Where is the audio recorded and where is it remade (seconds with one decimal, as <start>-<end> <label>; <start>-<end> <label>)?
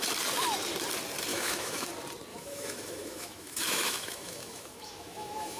0.0-1.3 recorded; 1.3-1.9 remade; 1.9-2.3 recorded; 2.3-5.6 remade